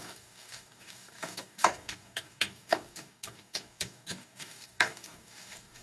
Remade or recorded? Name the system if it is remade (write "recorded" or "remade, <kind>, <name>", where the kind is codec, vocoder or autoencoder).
remade, codec, DAC